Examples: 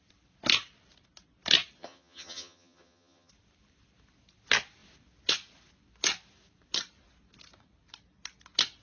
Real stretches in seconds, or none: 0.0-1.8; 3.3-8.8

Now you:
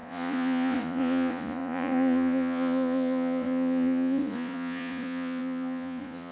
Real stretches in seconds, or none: none

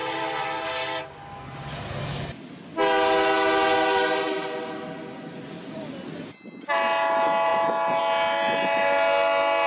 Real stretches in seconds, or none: 0.0-9.7

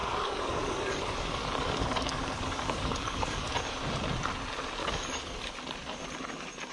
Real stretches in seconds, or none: 3.5-4.8; 5.5-6.7